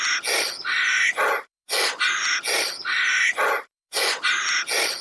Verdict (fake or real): real